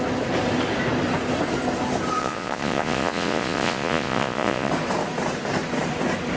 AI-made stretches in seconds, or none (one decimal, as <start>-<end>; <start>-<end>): 2.2-4.7